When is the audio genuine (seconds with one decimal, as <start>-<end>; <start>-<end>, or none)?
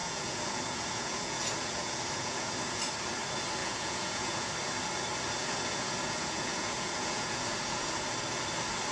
2.9-3.6; 4.5-5.4; 8.1-8.9